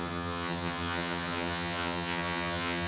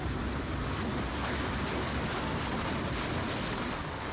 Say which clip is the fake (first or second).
first